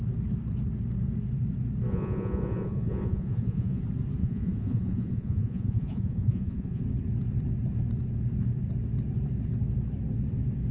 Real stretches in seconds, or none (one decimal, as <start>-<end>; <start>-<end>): 0.0-1.9; 3.8-4.2; 6.8-10.7